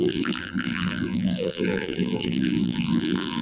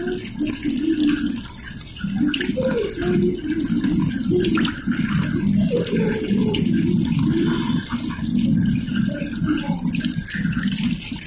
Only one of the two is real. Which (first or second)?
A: second